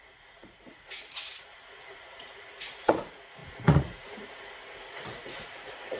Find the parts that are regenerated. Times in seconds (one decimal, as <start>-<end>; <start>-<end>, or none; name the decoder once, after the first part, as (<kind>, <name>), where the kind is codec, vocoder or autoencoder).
0.0-6.0 (vocoder, Vocos)